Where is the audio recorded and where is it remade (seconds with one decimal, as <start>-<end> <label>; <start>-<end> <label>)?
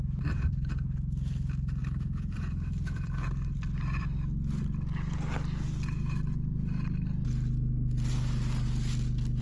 0.0-1.8 recorded; 1.8-4.6 remade; 4.6-9.4 recorded